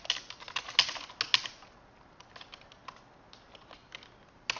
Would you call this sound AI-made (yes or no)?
no